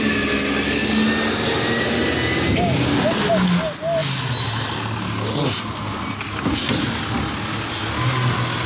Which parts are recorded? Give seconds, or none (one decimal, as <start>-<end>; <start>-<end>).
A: 0.0-8.7